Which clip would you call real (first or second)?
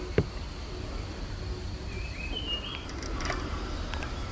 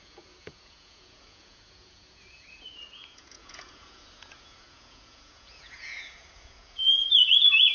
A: first